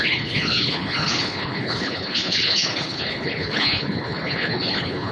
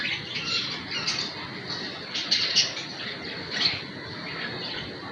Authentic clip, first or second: second